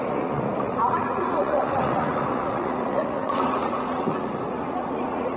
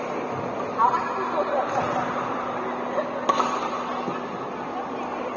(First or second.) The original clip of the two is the second